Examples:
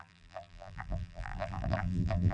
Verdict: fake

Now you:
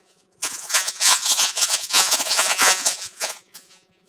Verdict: fake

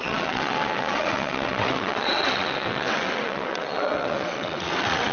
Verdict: fake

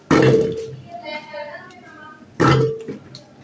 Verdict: real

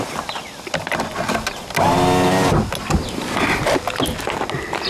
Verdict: real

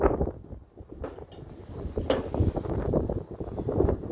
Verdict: real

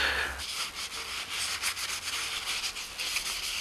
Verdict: real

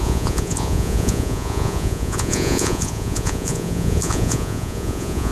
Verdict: fake